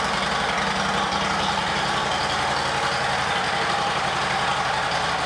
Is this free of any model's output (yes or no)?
yes